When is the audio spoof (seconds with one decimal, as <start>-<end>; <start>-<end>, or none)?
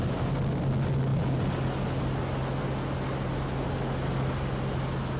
none